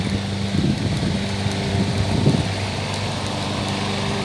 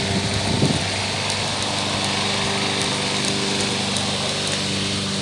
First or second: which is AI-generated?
first